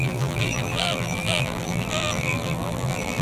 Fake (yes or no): yes